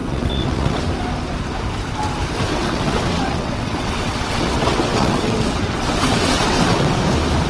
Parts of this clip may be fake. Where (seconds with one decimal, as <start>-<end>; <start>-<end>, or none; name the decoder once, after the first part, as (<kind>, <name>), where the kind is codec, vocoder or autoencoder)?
0.0-0.8 (vocoder, WaveNeXt); 2.5-7.0